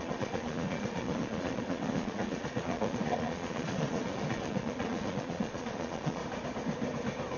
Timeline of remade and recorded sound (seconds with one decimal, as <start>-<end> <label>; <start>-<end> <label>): 0.0-6.2 remade; 6.2-7.4 recorded